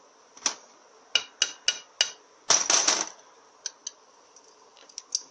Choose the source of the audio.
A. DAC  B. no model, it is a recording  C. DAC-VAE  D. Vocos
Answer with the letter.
B